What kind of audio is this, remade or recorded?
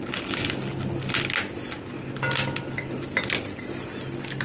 recorded